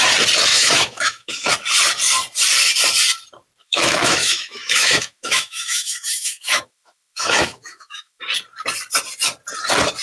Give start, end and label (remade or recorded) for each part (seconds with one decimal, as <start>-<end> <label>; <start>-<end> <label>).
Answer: 0.0-0.5 recorded; 0.5-1.5 remade; 1.5-3.6 recorded; 3.6-8.2 remade; 8.2-10.0 recorded